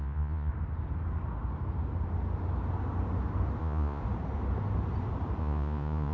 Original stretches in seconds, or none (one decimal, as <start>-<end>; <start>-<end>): 0.5-3.6; 4.0-5.4

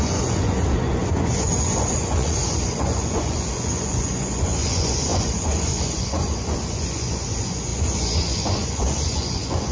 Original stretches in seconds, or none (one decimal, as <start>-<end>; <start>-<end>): none

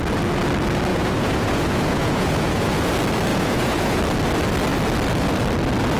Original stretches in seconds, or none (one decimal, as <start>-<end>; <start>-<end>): 0.0-0.9; 2.9-3.3; 4.0-6.0

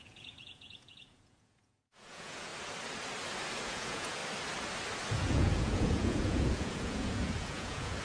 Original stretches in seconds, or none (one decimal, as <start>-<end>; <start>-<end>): 2.5-3.6; 4.2-5.1

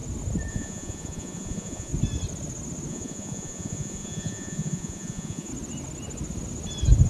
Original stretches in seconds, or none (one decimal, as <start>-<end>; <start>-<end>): 0.0-0.5; 1.9-2.9; 5.5-7.1

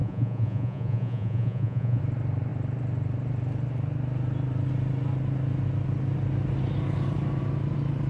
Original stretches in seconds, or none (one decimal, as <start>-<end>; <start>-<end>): 2.0-8.1

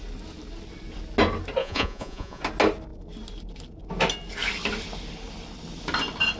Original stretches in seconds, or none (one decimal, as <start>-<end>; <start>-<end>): 0.0-1.6; 2.4-6.4

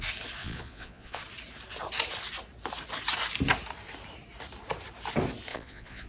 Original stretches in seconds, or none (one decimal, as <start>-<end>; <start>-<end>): 0.0-0.4; 1.2-5.5